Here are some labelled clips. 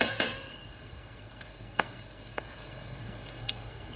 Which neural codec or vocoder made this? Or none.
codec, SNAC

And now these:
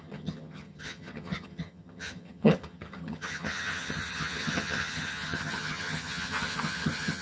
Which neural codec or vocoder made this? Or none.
vocoder, HiFi-GAN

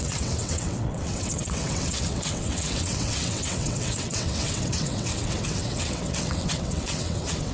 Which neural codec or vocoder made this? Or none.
vocoder, WaveNeXt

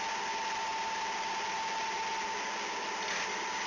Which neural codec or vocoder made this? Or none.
none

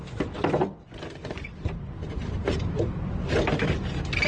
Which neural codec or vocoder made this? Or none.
none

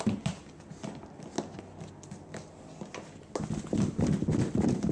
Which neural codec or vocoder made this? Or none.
none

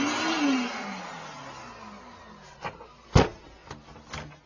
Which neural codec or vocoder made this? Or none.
none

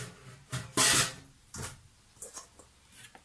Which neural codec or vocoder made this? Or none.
none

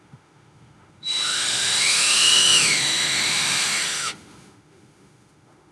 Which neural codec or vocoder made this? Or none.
autoencoder, DAC-VAE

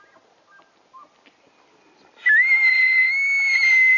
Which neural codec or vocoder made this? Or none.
none